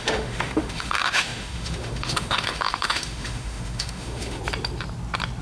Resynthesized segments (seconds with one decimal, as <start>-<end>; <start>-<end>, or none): 0.0-4.4